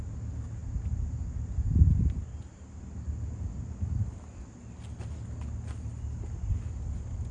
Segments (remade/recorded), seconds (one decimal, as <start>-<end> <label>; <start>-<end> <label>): 0.0-7.3 recorded